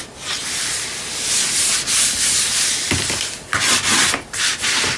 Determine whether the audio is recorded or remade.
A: recorded